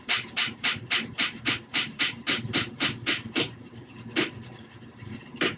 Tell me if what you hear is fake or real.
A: fake